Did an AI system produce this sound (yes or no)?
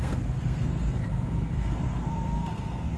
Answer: yes